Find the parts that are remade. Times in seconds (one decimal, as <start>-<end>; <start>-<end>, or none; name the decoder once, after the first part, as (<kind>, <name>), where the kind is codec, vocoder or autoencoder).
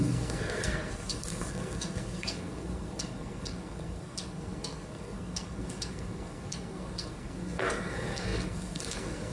0.0-9.3 (codec, SNAC)